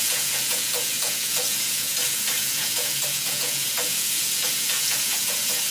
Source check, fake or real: fake